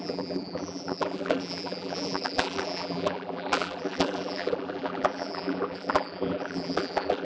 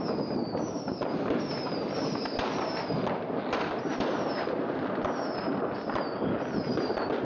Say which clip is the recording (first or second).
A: second